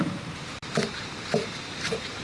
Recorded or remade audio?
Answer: remade